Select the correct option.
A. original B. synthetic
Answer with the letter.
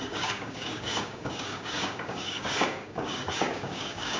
B